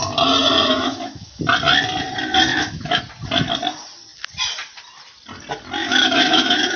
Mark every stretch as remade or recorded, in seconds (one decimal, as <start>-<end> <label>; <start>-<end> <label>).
0.0-0.7 recorded; 0.7-1.4 remade; 1.4-2.5 recorded; 2.5-3.0 remade; 3.0-5.8 recorded; 5.8-6.8 remade